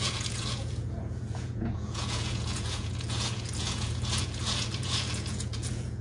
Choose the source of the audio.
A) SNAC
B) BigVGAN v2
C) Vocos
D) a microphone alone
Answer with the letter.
C